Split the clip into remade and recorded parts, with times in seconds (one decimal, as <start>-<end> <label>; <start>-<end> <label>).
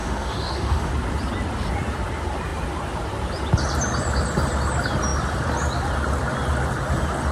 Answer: 0.0-0.9 remade; 0.9-7.3 recorded